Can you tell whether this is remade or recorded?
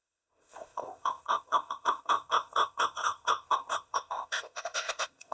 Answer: remade